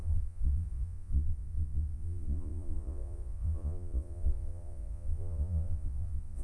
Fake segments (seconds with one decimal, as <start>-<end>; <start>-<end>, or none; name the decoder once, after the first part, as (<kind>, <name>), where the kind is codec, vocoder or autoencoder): 0.0-6.4 (vocoder, Vocos)